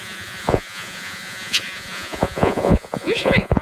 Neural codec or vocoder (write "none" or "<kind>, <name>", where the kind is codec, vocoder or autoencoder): vocoder, Vocos